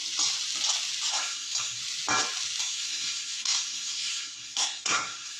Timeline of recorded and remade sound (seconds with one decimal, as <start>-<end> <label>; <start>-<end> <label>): 0.0-1.1 recorded; 1.1-1.8 remade; 1.8-2.6 recorded; 2.6-5.4 remade